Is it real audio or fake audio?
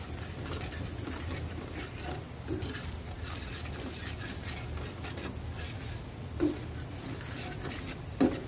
real